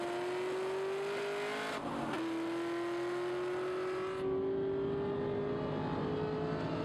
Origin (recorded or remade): recorded